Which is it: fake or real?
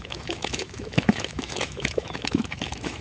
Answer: fake